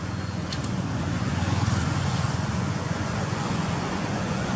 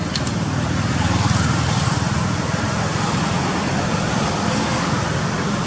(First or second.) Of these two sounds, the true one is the second